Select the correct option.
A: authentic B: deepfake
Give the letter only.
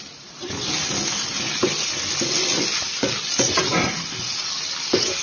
A